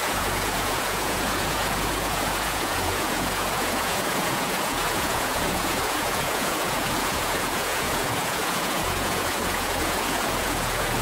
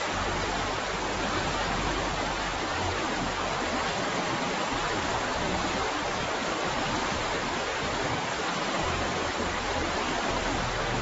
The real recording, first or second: second